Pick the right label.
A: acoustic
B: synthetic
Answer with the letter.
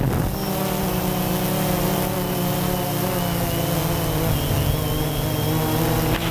A